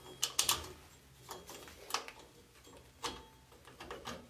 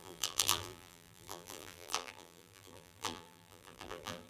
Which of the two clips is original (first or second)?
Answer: first